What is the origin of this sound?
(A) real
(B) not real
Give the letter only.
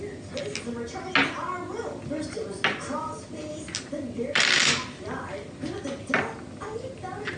A